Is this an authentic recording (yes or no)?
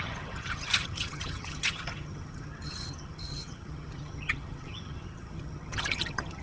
no